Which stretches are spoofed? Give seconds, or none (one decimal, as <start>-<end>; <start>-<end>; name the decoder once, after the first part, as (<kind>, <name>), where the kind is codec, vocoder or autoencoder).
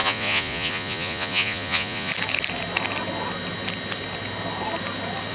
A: 0.0-2.1 (vocoder, Vocos)